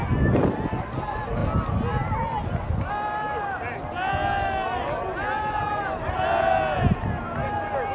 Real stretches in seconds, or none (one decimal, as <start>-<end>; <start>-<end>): 0.0-7.9